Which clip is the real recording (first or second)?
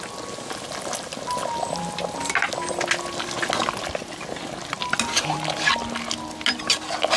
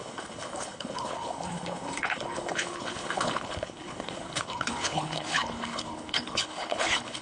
first